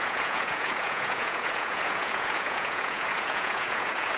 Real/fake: fake